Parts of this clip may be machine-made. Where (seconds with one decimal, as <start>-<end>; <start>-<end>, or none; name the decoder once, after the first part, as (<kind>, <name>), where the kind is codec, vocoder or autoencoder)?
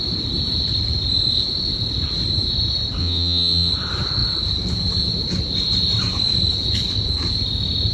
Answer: 3.0-3.7 (vocoder, WaveNeXt)